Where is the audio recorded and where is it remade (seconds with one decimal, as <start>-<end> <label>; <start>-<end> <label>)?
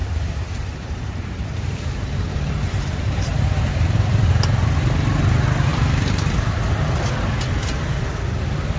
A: 0.0-4.3 remade; 4.3-5.7 recorded; 5.7-7.1 remade; 7.1-8.8 recorded